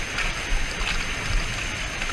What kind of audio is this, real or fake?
real